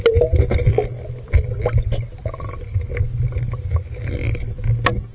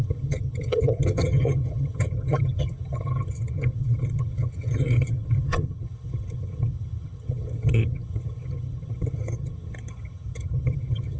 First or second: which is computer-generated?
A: second